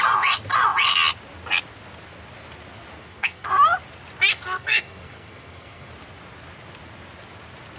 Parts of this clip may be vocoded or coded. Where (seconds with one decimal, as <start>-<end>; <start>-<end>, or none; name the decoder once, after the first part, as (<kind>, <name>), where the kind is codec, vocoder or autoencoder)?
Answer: 3.0-3.5 (codec, SNAC); 4.3-5.9